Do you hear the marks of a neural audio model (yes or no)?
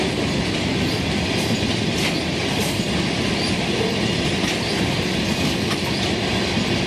no